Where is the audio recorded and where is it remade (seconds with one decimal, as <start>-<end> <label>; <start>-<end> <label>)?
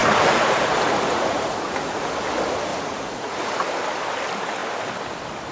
0.0-2.0 remade; 2.0-2.7 recorded; 2.7-3.5 remade; 3.5-5.5 recorded